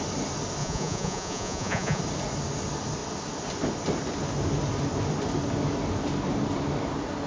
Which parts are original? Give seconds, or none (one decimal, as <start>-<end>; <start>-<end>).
0.0-0.6; 2.0-7.3